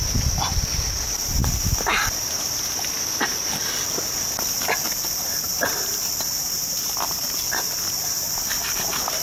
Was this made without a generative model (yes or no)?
yes